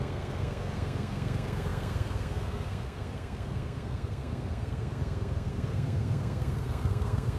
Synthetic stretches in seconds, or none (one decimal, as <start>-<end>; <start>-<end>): 0.0-7.4